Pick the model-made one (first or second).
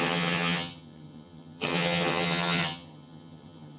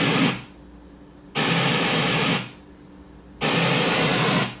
first